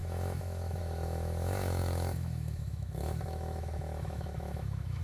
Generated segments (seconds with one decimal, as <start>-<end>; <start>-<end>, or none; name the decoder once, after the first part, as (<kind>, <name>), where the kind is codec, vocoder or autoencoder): 0.0-5.0 (autoencoder, DAC-VAE)